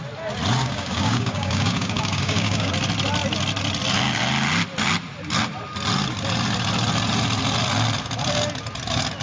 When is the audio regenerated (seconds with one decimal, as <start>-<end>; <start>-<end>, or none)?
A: 0.6-2.7